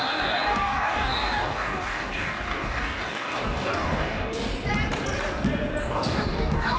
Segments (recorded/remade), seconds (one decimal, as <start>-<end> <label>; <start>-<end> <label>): 0.0-4.5 remade; 4.5-5.8 recorded; 5.8-6.8 remade